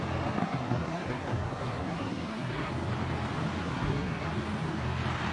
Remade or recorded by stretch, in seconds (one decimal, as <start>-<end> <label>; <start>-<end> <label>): 0.0-0.4 recorded; 0.4-2.7 remade; 2.7-3.6 recorded; 3.6-4.3 remade; 4.3-5.3 recorded